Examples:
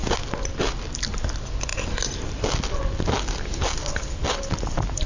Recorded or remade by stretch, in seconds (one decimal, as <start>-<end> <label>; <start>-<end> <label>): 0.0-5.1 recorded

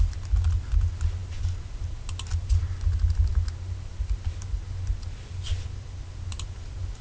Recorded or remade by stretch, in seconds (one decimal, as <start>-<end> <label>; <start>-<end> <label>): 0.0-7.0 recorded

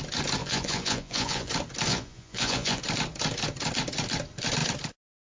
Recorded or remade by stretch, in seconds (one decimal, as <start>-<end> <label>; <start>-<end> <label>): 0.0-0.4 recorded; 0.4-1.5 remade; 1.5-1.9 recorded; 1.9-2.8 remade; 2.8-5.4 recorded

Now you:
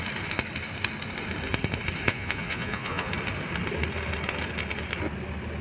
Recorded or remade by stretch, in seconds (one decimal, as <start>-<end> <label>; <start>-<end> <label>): 0.0-2.1 recorded; 2.1-3.1 remade; 3.1-5.6 recorded

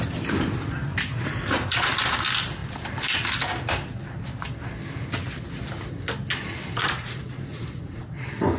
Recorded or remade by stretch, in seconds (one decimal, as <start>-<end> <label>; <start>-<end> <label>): 0.0-6.8 recorded; 6.8-8.0 remade; 8.0-8.6 recorded